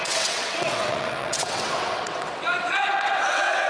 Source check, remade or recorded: remade